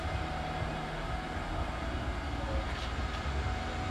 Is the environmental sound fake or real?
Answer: real